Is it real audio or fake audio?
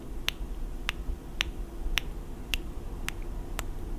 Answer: real